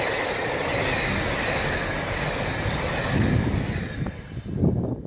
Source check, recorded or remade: recorded